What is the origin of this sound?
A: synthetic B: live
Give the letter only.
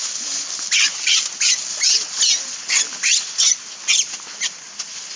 B